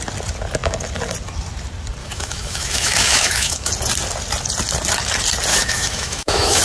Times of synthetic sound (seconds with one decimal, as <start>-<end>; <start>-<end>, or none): 2.0-3.7; 5.5-6.6